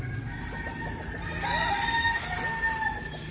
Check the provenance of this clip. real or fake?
real